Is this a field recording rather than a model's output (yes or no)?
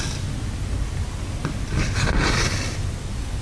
yes